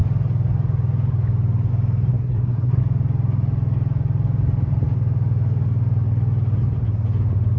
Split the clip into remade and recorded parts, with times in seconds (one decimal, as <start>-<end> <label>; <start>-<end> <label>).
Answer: 0.0-2.1 recorded; 2.1-2.8 remade; 2.8-7.6 recorded